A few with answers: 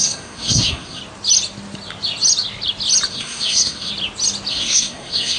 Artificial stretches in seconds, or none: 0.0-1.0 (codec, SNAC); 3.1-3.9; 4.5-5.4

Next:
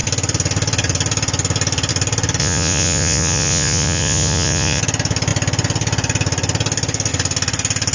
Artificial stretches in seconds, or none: 2.4-4.8 (vocoder, Vocos)

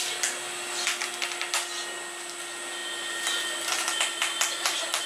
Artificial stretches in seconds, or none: none

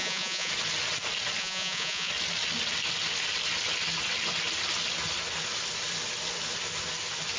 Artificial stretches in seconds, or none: 0.0-0.5 (vocoder, Vocos); 1.4-2.1

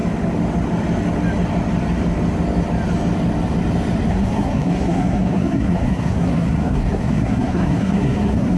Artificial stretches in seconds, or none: 4.1-8.6 (codec, SNAC)